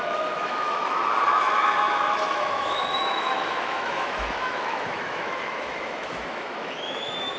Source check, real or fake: fake